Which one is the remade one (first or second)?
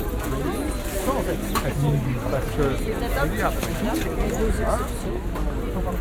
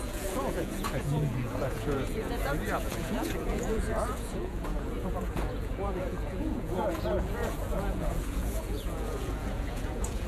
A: second